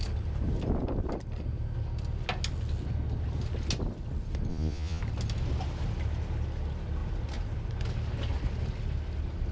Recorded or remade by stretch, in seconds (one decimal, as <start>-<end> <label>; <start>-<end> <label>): 0.0-4.5 recorded; 4.5-5.0 remade; 5.0-9.5 recorded